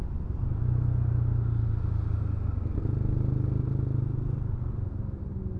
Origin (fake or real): real